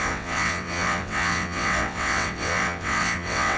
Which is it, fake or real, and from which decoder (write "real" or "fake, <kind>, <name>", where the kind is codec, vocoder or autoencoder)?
fake, vocoder, WaveNeXt